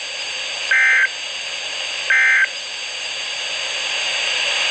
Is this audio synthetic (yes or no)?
no